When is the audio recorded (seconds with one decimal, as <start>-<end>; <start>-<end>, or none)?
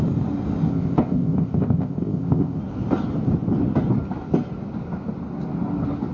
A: 0.0-0.7; 2.6-6.1